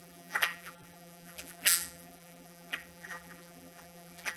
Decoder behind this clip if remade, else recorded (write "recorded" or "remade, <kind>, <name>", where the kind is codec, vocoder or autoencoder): remade, vocoder, BigVGAN v2